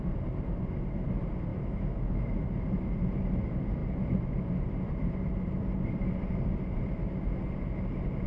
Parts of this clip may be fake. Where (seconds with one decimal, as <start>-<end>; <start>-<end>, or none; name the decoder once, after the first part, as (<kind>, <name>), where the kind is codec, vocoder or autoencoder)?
1.5-2.3 (autoencoder, DAC-VAE)